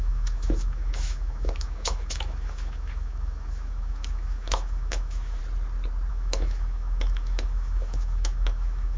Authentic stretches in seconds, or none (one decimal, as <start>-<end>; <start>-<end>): 5.4-6.1